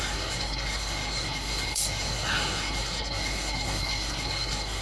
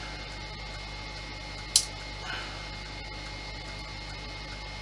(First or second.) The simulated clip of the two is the first